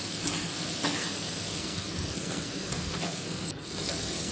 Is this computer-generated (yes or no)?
yes